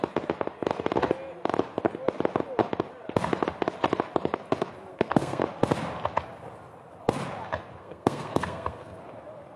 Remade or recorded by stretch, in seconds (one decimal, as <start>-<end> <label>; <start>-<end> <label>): 0.0-4.9 recorded; 4.9-5.4 remade; 5.4-7.8 recorded; 7.8-9.0 remade; 9.0-9.6 recorded